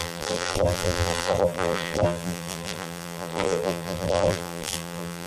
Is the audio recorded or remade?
remade